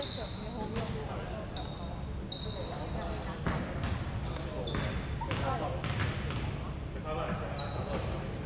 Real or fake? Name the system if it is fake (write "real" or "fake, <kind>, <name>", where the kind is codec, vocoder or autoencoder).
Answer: real